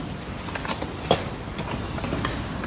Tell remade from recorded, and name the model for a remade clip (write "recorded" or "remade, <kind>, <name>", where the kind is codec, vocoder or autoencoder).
recorded